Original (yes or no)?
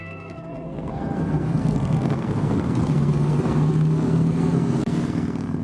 no